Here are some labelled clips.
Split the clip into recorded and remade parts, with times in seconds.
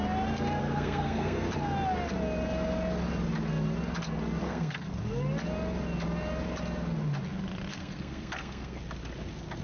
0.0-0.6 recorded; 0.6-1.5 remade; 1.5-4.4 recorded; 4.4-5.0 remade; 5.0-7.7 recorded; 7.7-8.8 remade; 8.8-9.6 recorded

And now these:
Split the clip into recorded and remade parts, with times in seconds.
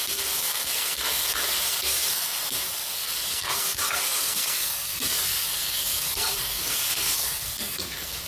0.0-8.3 remade